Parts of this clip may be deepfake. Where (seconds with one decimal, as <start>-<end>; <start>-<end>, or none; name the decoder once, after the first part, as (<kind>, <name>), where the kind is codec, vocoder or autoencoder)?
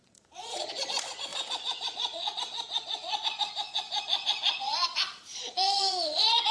0.0-6.5 (vocoder, Vocos)